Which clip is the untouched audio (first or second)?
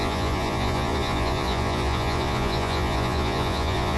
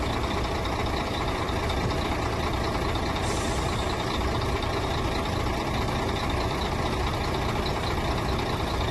second